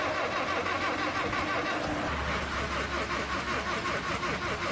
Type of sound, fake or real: real